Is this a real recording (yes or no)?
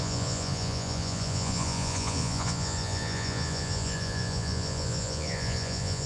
no